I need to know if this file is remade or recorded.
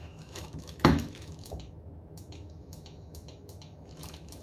remade